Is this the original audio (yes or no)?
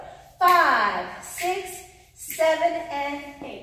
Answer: yes